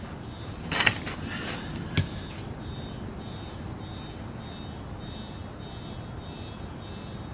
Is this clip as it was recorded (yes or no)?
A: yes